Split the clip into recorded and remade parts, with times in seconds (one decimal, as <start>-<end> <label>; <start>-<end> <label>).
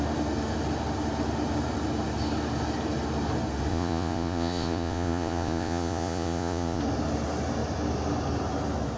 0.0-3.7 recorded; 3.7-6.8 remade; 6.8-9.0 recorded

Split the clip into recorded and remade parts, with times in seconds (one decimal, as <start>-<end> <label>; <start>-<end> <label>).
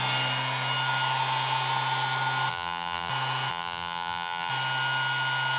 0.0-2.5 recorded; 2.5-3.1 remade; 3.1-3.5 recorded; 3.5-4.5 remade; 4.5-5.6 recorded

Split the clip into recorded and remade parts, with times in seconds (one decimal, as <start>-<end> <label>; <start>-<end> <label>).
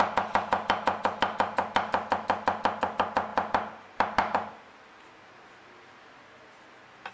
0.0-7.1 recorded